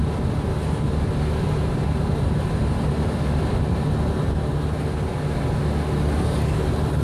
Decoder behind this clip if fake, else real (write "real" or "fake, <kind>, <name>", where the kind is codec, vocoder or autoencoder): real